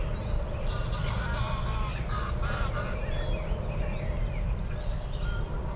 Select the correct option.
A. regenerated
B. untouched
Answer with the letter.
B